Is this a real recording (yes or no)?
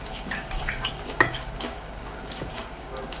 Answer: no